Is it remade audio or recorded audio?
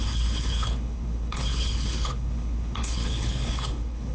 remade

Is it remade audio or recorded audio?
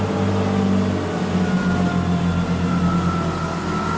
recorded